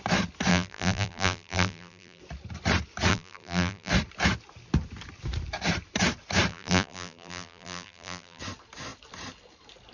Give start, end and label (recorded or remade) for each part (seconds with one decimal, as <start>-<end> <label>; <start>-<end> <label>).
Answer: 0.0-0.5 recorded; 0.5-2.2 remade; 2.2-3.1 recorded; 3.1-3.9 remade; 3.9-6.5 recorded; 6.5-8.4 remade; 8.4-9.9 recorded